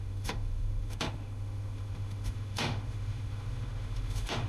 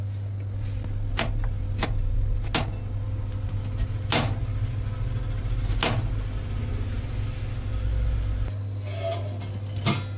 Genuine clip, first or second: second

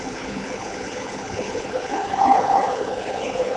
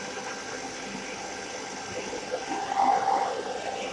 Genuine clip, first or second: second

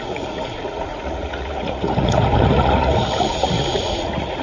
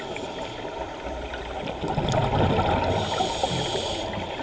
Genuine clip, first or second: second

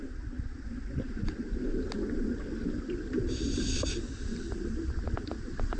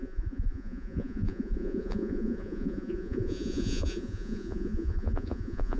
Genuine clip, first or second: first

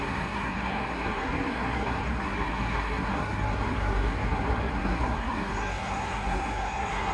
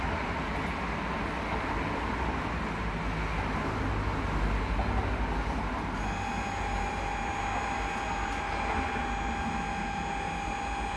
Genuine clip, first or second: second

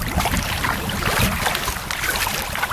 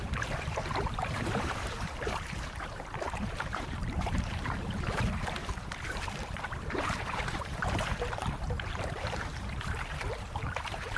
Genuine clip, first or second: first